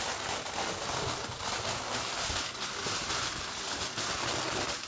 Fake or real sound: real